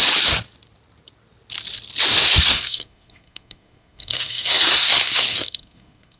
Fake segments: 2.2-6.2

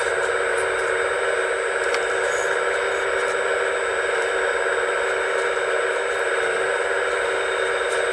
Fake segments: none

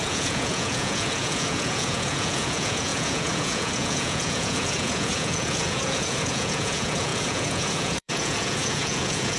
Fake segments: 0.0-9.4

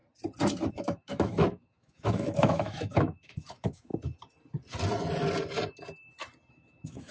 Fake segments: 0.7-3.9; 6.5-7.1

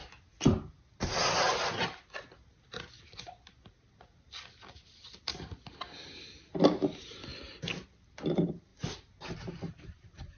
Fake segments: 4.7-7.3; 7.8-8.7; 9.7-10.4

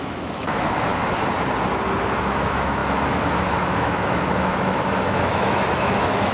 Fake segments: 0.0-0.9; 2.2-6.3

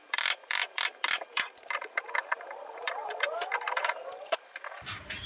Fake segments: 0.0-5.3

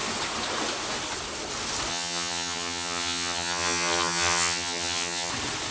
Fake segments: 1.9-5.3